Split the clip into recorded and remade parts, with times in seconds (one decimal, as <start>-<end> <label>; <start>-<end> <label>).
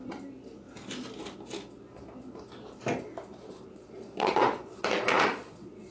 0.0-3.3 recorded; 3.3-5.9 remade